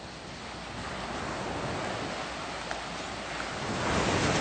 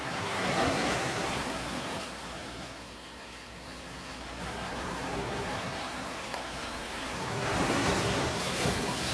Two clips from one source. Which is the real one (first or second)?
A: first